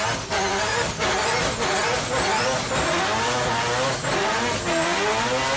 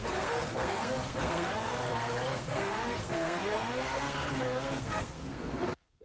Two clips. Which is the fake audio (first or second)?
second